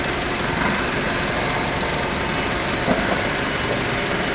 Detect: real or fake fake